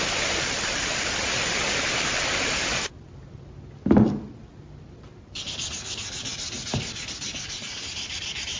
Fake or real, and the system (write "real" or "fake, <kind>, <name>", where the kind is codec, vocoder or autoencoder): real